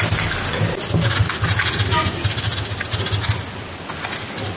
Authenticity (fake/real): real